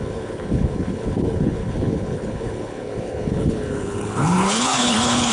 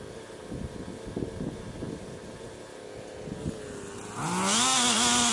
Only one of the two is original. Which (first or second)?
second